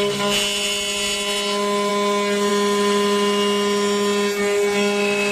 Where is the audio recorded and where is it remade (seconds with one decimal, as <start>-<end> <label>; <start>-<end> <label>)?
0.0-5.3 recorded